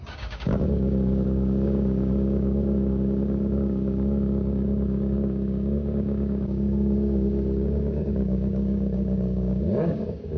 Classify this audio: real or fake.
fake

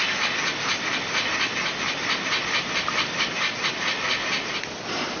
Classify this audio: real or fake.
real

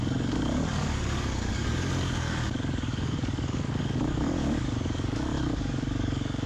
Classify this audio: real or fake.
fake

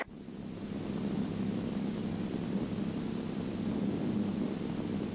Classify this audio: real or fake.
real